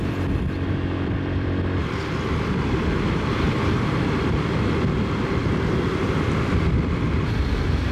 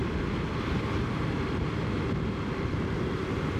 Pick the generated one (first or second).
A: first